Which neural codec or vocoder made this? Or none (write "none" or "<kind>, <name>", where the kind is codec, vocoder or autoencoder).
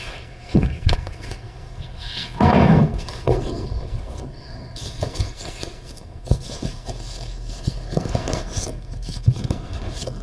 codec, SNAC